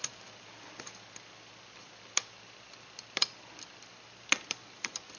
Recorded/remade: recorded